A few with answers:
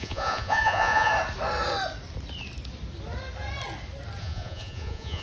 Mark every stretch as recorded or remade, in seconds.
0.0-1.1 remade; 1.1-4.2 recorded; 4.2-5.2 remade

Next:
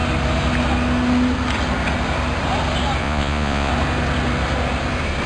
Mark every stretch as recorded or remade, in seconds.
0.0-3.0 recorded; 3.0-3.7 remade; 3.7-5.3 recorded

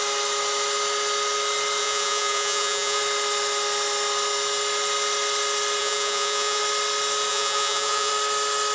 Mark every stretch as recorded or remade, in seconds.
0.0-1.8 recorded; 1.8-3.0 remade; 3.0-5.8 recorded; 5.8-6.6 remade; 6.6-7.3 recorded; 7.3-8.1 remade; 8.1-8.7 recorded